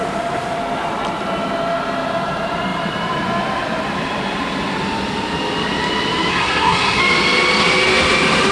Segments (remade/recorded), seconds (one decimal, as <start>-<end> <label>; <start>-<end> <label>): 0.0-6.3 recorded; 6.3-7.0 remade; 7.0-8.5 recorded